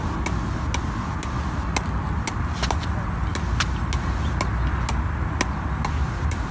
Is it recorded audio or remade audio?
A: recorded